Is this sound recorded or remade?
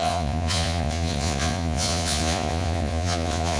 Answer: remade